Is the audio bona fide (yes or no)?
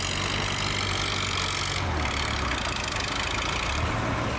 yes